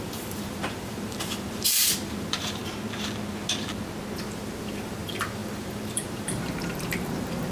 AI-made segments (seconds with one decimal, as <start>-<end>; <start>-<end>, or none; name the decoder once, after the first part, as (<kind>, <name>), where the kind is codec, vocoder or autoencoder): 0.0-2.6 (vocoder, BigVGAN v2); 4.2-7.5